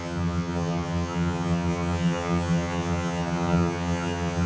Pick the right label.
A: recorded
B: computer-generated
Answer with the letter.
B